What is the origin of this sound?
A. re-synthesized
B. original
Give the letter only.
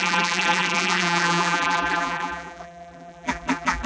A